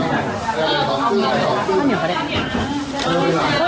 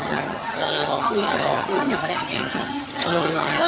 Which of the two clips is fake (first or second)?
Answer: second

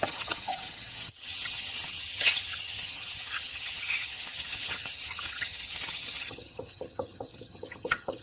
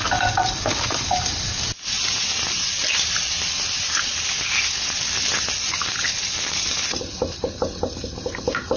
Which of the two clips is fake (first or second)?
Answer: first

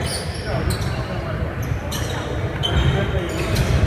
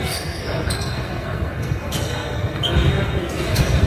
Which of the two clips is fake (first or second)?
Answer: second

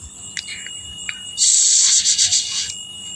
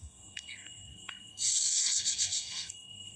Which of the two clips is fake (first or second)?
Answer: second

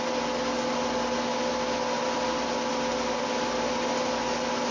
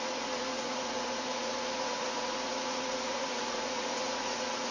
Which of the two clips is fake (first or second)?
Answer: second